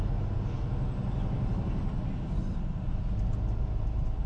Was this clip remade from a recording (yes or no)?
no